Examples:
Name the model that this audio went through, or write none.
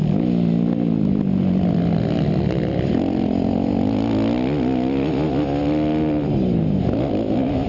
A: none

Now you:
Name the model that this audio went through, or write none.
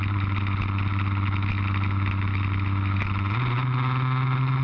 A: none